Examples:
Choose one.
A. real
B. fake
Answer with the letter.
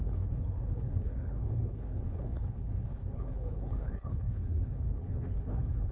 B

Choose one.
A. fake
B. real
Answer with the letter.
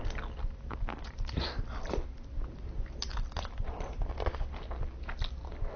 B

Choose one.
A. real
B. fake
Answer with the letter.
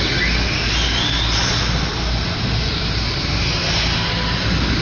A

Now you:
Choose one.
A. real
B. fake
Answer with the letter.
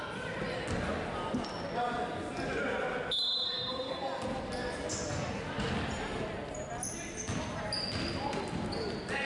A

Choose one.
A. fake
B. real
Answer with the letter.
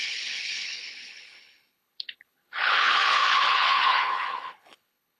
A